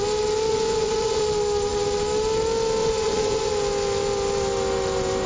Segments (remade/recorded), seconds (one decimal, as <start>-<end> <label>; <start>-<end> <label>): 0.0-0.5 recorded; 0.5-1.2 remade; 1.2-2.8 recorded; 2.8-3.5 remade; 3.5-5.3 recorded